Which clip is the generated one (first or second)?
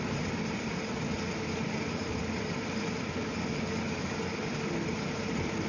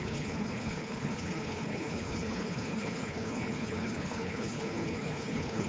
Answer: second